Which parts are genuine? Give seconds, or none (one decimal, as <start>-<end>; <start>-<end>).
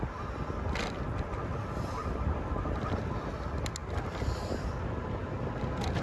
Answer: 0.0-3.8; 4.7-6.0